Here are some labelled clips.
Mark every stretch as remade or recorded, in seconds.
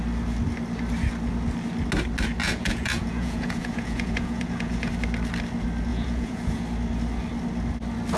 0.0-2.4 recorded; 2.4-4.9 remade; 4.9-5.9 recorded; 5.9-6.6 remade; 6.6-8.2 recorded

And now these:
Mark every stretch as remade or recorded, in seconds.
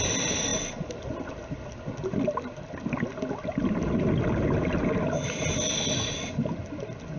0.0-7.2 recorded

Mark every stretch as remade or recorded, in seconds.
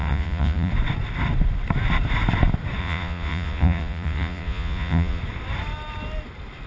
0.0-0.7 remade; 0.7-2.8 recorded; 2.8-5.2 remade; 5.2-6.7 recorded